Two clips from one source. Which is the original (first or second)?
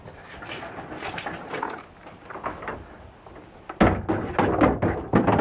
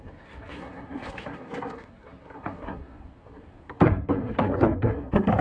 first